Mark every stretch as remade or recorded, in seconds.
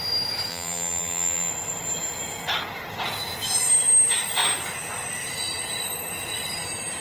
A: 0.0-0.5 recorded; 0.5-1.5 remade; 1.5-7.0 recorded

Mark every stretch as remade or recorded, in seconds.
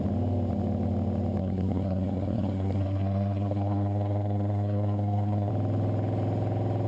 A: 0.0-1.4 recorded; 1.4-5.5 remade; 5.5-6.9 recorded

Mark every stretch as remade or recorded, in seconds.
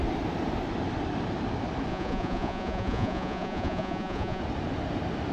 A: 0.0-1.9 recorded; 1.9-4.4 remade; 4.4-5.3 recorded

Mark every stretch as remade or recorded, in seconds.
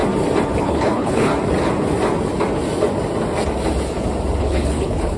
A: 0.0-0.6 recorded; 0.6-1.3 remade; 1.3-4.4 recorded; 4.4-5.2 remade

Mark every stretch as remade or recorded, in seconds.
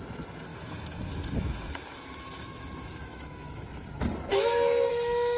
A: 0.0-0.5 recorded; 0.5-3.7 remade; 3.7-4.3 recorded; 4.3-4.9 remade; 4.9-5.4 recorded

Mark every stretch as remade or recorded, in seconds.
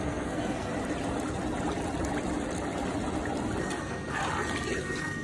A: 0.0-0.7 remade; 0.7-3.8 recorded; 3.8-4.2 remade; 4.2-4.8 recorded; 4.8-5.2 remade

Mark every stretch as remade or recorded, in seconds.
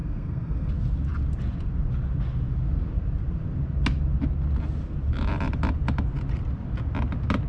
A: 0.0-0.7 remade; 0.7-7.5 recorded